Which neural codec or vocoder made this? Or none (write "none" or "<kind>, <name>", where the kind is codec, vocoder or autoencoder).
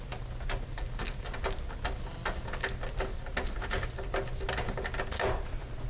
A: none